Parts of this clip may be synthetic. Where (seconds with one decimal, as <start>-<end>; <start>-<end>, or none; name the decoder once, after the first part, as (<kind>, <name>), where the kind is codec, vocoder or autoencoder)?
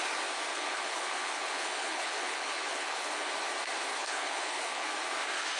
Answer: 0.5-3.3 (codec, HILCodec); 3.9-4.9